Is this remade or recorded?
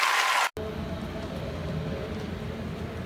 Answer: recorded